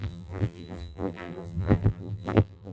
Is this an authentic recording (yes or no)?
no